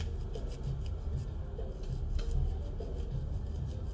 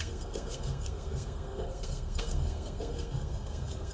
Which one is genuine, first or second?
first